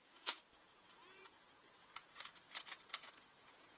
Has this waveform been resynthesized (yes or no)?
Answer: yes